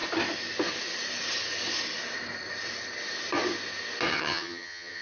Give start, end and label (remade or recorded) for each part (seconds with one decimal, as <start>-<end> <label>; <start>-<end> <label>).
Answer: 0.0-4.1 recorded; 4.1-5.0 remade